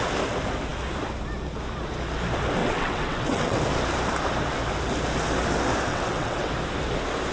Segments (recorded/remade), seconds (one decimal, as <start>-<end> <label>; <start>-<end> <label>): 0.0-2.6 recorded; 2.6-3.6 remade; 3.6-5.9 recorded; 5.9-6.5 remade; 6.5-7.3 recorded